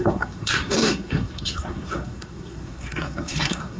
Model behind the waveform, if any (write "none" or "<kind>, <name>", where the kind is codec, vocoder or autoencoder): codec, SNAC